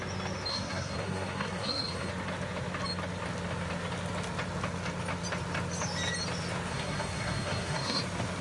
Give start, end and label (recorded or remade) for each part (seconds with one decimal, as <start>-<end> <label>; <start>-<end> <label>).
0.0-0.5 recorded; 0.5-2.1 remade; 2.1-6.7 recorded; 6.7-8.0 remade; 8.0-8.4 recorded